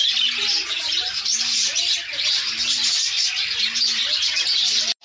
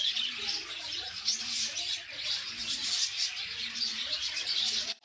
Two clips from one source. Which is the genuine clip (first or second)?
first